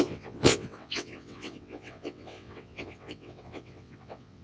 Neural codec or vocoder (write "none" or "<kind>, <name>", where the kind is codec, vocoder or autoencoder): vocoder, WaveNeXt